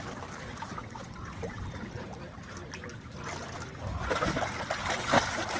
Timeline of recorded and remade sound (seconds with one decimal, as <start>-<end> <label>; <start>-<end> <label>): 0.0-0.8 recorded; 0.8-1.6 remade; 1.6-5.6 recorded